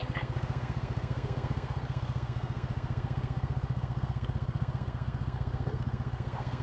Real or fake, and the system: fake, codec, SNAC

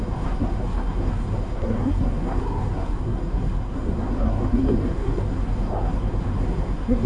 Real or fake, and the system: fake, codec, SNAC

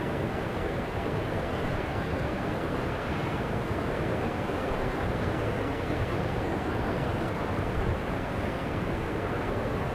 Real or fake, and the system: fake, codec, SNAC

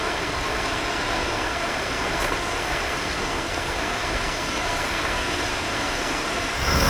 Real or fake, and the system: fake, codec, SNAC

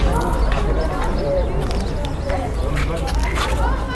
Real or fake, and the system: real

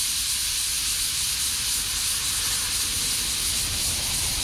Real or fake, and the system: real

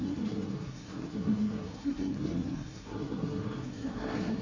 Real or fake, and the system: fake, codec, SNAC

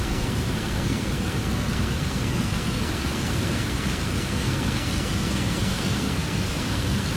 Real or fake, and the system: fake, codec, SNAC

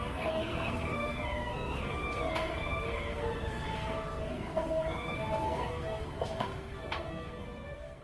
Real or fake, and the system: fake, codec, SNAC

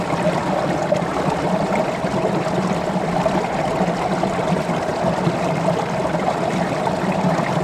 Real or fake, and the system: real